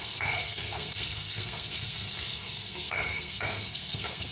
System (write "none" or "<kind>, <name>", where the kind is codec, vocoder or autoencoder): codec, SNAC